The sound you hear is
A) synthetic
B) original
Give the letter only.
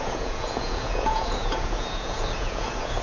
A